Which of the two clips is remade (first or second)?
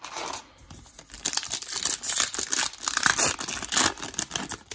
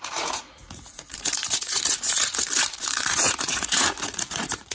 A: second